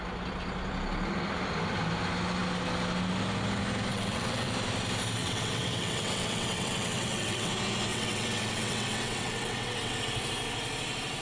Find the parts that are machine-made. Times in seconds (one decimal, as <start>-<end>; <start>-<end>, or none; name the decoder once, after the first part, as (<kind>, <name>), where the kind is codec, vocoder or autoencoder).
3.9-4.5 (vocoder, WaveNeXt); 5.2-7.5; 7.9-10.0